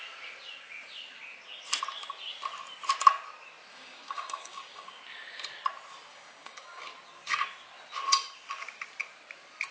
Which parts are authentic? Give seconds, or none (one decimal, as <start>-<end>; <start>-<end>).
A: 0.0-3.7; 5.0-6.1; 6.8-9.7